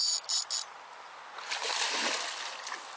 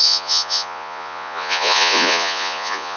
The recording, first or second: first